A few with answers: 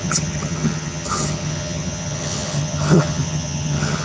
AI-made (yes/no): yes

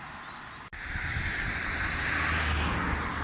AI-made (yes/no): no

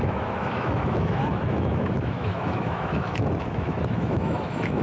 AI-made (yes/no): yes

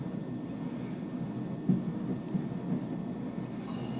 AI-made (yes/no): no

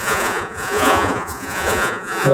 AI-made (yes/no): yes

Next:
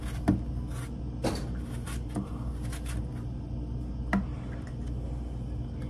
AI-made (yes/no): no